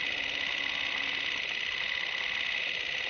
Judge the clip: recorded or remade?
recorded